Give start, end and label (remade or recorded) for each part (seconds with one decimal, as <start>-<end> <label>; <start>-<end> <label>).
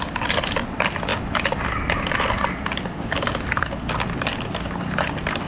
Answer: 0.0-5.5 recorded